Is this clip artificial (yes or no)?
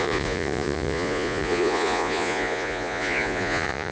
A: yes